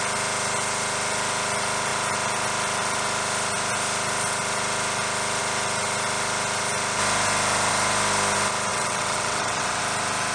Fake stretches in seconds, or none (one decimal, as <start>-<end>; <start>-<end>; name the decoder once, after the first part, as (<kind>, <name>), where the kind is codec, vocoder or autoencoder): 8.7-9.8 (vocoder, WaveNeXt)